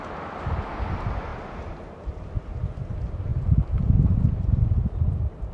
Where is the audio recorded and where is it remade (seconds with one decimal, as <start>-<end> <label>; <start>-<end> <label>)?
0.0-1.3 recorded; 1.3-2.3 remade; 2.3-3.3 recorded; 3.3-4.2 remade; 4.2-5.5 recorded